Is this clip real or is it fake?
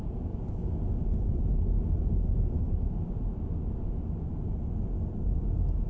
real